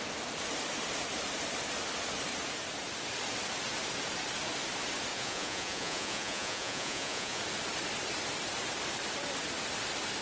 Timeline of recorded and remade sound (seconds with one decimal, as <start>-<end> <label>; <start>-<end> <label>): 0.0-5.1 recorded; 5.1-7.4 remade; 7.4-10.2 recorded

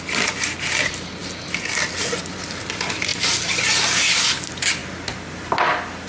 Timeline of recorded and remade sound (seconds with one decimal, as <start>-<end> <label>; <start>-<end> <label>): 0.0-6.1 recorded

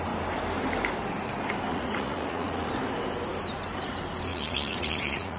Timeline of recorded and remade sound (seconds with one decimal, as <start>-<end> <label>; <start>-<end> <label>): 0.0-1.7 recorded; 1.7-2.7 remade; 2.7-4.3 recorded; 4.3-5.4 remade

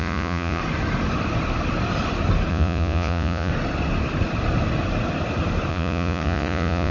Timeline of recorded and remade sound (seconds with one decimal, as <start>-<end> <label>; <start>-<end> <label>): 0.0-0.6 remade; 0.6-2.5 recorded; 2.5-3.5 remade; 3.5-5.7 recorded; 5.7-6.9 remade

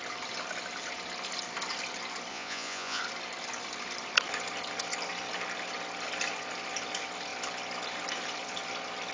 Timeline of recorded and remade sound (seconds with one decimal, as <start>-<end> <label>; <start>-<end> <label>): 0.0-2.3 recorded; 2.3-3.0 remade; 3.0-9.1 recorded

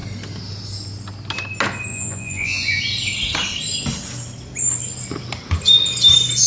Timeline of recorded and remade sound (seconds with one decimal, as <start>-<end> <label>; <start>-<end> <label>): 0.0-1.9 recorded; 1.9-2.8 remade; 2.8-6.5 recorded